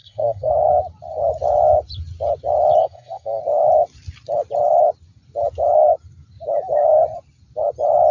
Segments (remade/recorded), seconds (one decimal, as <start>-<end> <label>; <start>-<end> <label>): 0.0-0.5 remade; 0.5-2.8 recorded; 2.8-3.4 remade; 3.4-8.1 recorded

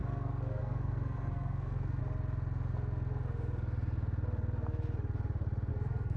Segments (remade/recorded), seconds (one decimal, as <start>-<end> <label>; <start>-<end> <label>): 0.0-2.0 remade; 2.0-5.7 recorded; 5.7-6.2 remade

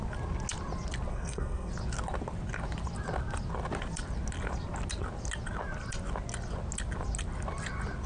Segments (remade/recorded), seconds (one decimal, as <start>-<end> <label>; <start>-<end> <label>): 0.0-1.1 recorded; 1.1-1.7 remade; 1.7-8.1 recorded

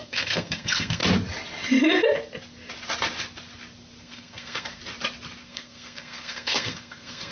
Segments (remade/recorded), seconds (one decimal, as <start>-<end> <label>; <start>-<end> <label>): 0.0-1.0 remade; 1.0-4.0 recorded; 4.0-4.8 remade; 4.8-5.4 recorded; 5.4-7.3 remade

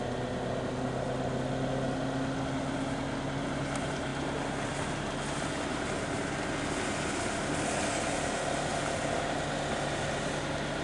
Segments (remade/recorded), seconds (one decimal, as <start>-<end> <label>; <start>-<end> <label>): 0.0-10.8 recorded

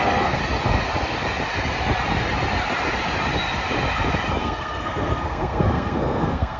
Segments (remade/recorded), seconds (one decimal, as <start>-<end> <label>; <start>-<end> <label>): 0.0-0.4 remade; 0.4-4.4 recorded; 4.4-6.6 remade

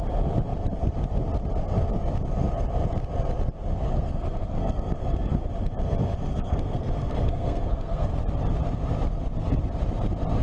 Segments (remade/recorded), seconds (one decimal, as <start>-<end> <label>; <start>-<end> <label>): 0.0-3.7 recorded; 3.7-5.5 remade; 5.5-6.3 recorded; 6.3-8.1 remade; 8.1-10.4 recorded

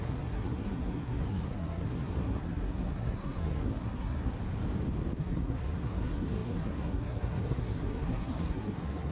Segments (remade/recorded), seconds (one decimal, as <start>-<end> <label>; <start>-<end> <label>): 0.0-4.3 remade; 4.3-5.2 recorded; 5.2-9.1 remade